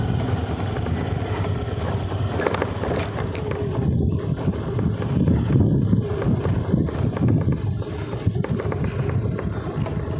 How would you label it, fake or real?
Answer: real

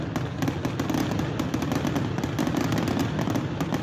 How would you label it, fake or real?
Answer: real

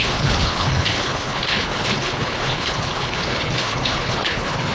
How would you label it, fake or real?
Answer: fake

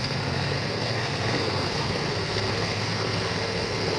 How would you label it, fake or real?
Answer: fake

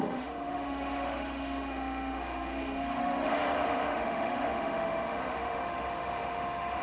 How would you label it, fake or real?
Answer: fake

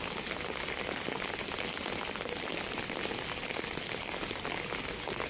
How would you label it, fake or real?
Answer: real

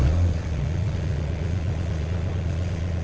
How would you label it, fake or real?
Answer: fake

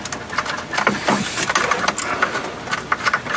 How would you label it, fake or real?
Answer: real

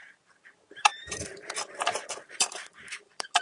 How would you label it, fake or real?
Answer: fake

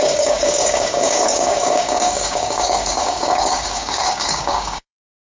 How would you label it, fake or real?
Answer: fake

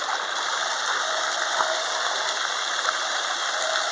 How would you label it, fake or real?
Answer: real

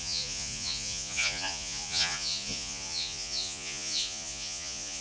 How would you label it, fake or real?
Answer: fake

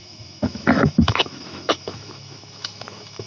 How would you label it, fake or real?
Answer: fake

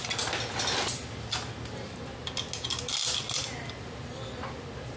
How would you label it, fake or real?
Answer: real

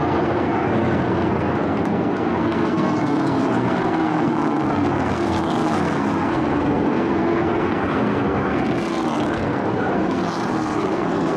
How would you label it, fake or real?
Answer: fake